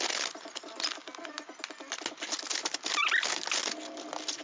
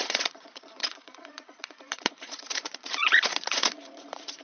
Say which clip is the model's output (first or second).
second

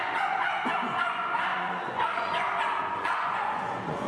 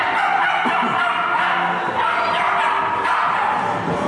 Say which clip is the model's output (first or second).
first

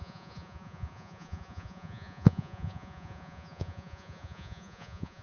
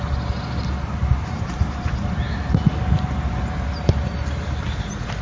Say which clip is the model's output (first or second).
first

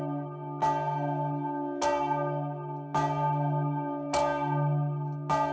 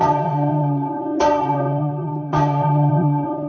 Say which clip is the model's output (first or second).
second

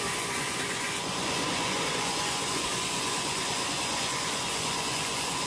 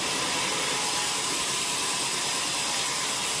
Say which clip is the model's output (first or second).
first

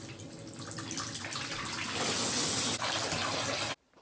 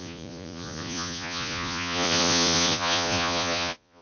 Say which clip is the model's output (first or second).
second